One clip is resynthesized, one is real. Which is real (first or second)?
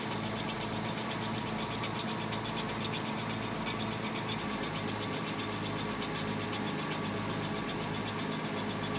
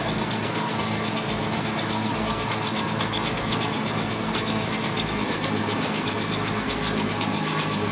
first